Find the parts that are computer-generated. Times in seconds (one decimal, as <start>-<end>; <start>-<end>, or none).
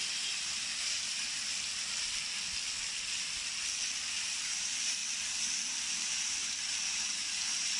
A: 0.0-1.7; 4.1-5.0; 5.9-7.8